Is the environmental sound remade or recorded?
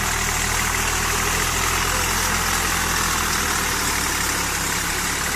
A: recorded